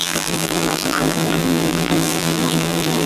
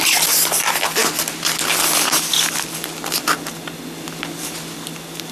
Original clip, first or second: second